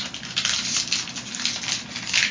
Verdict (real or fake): real